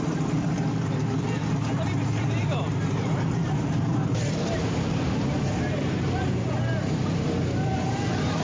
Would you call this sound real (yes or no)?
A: no